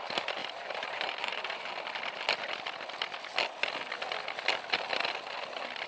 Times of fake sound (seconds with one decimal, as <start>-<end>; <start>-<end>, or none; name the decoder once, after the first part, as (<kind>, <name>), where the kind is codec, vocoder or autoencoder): 0.4-1.7 (vocoder, BigVGAN v2)